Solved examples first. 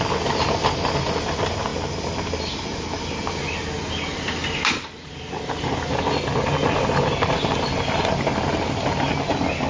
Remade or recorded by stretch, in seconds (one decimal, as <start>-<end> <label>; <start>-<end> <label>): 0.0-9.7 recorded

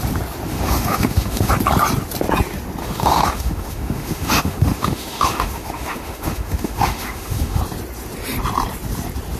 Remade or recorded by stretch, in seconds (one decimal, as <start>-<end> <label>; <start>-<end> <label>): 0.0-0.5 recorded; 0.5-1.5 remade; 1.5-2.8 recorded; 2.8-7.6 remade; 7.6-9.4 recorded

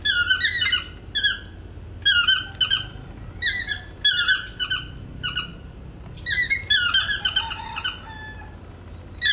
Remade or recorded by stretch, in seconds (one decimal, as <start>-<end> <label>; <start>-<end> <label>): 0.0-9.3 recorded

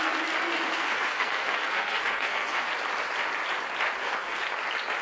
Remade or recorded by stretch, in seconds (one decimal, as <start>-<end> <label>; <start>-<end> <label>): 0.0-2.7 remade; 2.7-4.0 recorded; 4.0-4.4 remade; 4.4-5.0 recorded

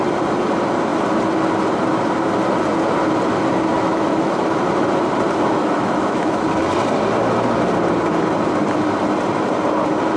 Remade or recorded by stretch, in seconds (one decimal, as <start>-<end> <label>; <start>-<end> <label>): 0.0-3.7 recorded; 3.7-4.6 remade; 4.6-5.6 recorded; 5.6-6.5 remade; 6.5-10.2 recorded

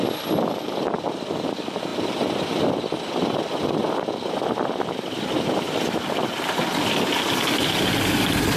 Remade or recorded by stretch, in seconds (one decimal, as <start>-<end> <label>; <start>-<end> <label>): 0.0-8.6 recorded